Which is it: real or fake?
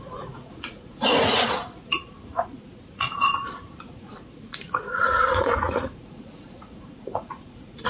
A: fake